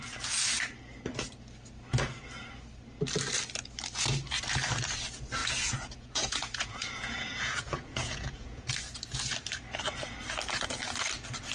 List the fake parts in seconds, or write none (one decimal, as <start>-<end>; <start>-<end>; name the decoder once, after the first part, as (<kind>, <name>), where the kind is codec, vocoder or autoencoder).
5.4-8.7 (vocoder, Vocos)